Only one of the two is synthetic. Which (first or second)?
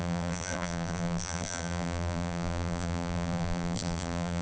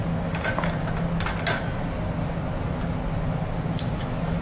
first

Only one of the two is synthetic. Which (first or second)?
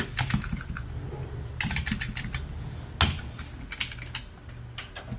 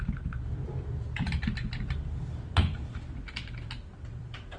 second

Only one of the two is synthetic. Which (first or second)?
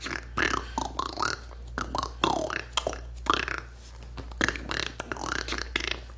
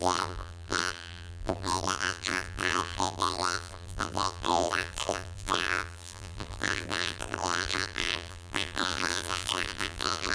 second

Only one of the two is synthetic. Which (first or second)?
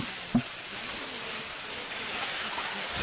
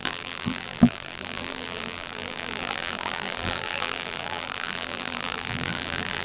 second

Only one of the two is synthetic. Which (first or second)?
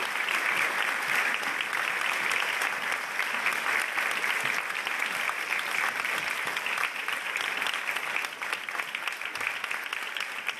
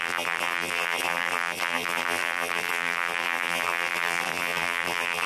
second